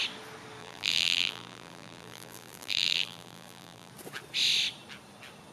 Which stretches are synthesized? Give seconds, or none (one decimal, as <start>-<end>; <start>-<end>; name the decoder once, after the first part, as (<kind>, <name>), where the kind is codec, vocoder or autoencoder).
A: 0.6-3.9 (vocoder, BigVGAN v2)